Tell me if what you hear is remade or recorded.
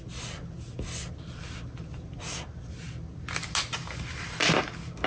recorded